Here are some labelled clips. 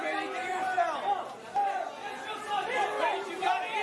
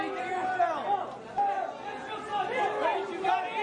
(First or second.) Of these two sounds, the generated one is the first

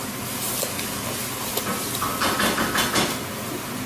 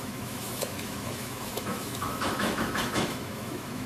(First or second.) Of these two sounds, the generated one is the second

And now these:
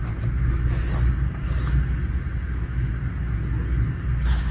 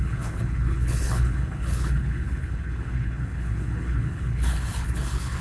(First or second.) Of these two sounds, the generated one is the second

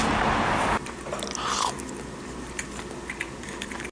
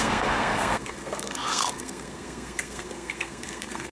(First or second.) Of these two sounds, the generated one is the second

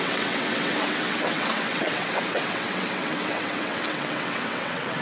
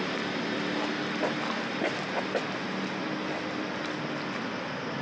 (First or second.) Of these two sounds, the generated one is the first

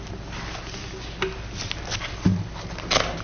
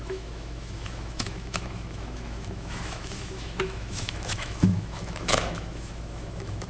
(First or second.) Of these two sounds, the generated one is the second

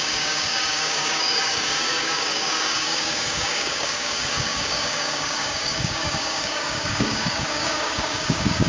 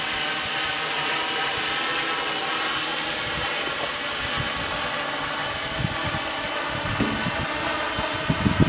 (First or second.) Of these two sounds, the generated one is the first